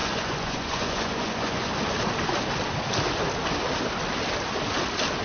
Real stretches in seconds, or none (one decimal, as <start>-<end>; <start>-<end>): 1.7-5.2